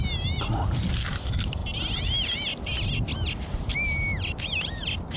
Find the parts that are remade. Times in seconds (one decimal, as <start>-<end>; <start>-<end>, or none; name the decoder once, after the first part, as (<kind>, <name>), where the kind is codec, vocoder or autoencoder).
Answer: 0.0-1.6 (vocoder, BigVGAN v2); 4.7-5.2